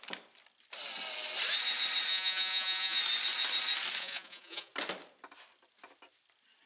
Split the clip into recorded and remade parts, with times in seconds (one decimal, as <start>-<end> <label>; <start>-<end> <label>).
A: 0.0-2.1 recorded; 2.1-3.0 remade; 3.0-4.0 recorded; 4.0-4.7 remade; 4.7-6.7 recorded